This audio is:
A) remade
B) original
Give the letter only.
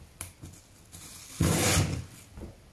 B